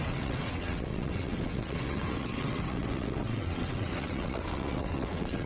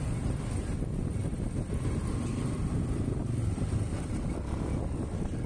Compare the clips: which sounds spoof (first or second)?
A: first